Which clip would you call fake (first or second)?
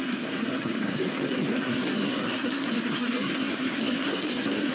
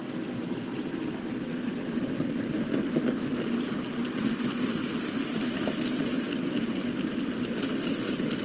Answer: first